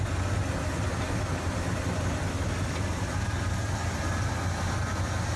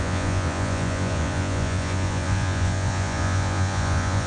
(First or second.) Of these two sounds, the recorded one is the first